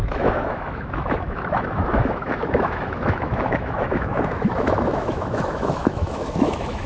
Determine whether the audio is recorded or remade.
remade